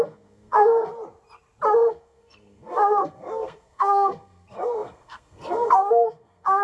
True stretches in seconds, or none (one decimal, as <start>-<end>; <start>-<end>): 0.9-1.9